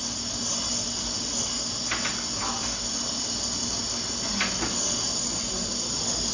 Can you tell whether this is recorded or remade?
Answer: recorded